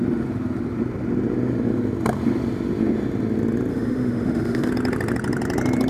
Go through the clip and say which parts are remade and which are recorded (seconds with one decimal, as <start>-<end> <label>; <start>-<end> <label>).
0.0-3.7 recorded; 3.7-4.7 remade; 4.7-5.9 recorded